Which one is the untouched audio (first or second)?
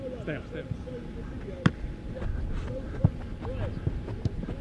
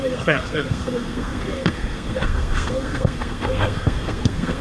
first